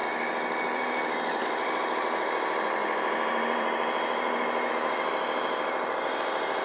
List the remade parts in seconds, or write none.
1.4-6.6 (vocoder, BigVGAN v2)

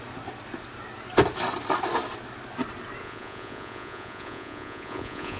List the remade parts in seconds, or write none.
3.0-5.4 (vocoder, Vocos)

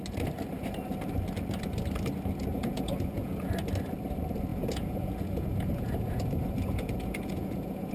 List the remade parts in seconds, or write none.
2.5-3.5 (vocoder, Vocos); 4.5-7.9

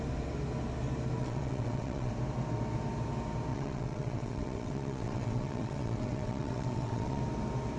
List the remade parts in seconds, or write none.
1.2-2.1 (vocoder, WaveNeXt); 3.5-7.2

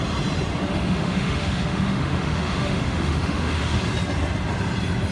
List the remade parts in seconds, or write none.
0.7-3.8 (autoencoder, DAC-VAE)

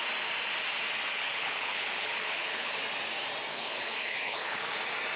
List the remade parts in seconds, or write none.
1.1-2.8 (codec, HILCodec); 3.5-4.8

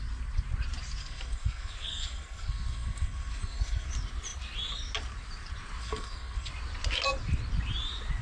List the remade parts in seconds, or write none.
1.0-3.9 (codec, SNAC); 5.8-6.5